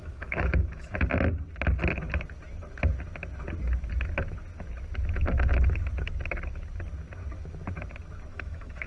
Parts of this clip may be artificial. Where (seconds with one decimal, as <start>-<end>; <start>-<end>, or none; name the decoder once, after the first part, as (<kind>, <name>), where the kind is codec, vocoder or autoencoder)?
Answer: 0.0-1.0 (autoencoder, DAC-VAE); 8.3-8.9